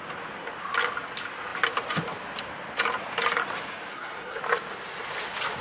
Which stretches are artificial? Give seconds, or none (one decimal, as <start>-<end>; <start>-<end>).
3.9-4.4